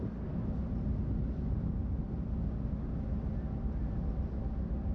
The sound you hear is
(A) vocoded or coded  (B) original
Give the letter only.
B